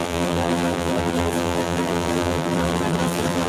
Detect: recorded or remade remade